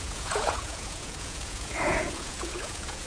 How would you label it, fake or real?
fake